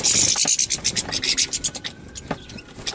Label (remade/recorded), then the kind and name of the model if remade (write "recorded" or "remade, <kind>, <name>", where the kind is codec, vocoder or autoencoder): recorded